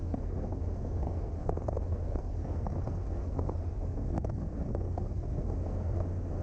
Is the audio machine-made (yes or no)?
yes